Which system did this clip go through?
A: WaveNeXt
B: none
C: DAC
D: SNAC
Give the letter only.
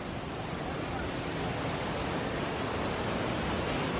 B